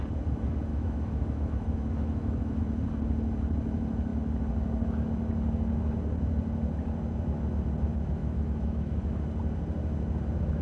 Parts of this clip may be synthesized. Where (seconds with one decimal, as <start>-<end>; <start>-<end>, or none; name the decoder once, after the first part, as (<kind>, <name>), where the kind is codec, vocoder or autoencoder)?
0.7-2.6 (autoencoder, DAC-VAE); 7.9-9.2